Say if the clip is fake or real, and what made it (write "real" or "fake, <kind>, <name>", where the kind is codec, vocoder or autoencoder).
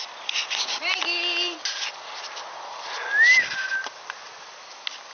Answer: real